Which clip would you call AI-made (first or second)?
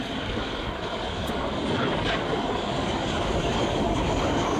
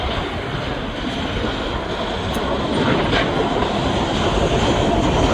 first